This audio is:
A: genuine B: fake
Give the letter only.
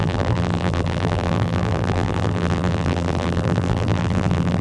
B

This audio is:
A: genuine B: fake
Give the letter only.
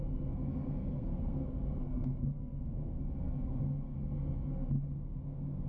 B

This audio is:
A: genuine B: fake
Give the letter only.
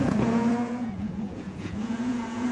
B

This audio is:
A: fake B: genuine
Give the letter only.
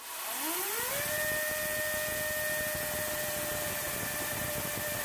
B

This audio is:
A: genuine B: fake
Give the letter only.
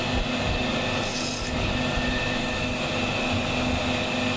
A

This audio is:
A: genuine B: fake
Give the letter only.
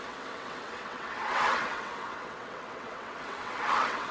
B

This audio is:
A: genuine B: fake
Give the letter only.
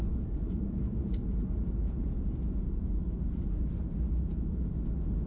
B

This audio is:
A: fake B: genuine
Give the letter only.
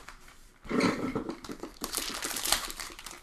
A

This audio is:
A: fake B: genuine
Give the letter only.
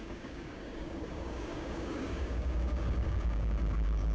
A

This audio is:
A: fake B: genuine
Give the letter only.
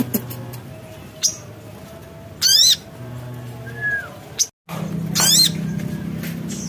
B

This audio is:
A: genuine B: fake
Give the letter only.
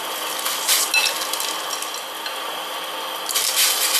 A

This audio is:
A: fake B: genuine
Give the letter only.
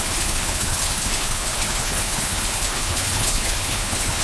A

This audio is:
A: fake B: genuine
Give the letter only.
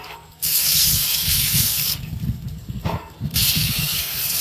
A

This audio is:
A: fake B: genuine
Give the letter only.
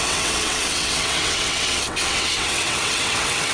A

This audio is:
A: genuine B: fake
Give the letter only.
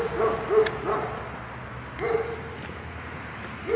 A